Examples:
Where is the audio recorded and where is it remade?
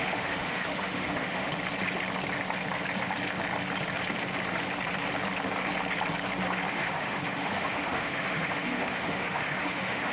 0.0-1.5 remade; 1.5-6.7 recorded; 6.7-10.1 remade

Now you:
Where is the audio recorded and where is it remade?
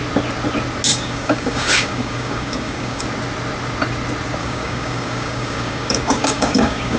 0.0-0.9 recorded; 0.9-3.0 remade; 3.0-4.4 recorded; 4.4-7.0 remade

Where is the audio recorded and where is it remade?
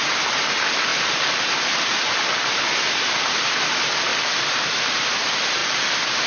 0.0-0.9 recorded; 0.9-2.0 remade; 2.0-4.1 recorded; 4.1-4.7 remade; 4.7-5.6 recorded; 5.6-6.3 remade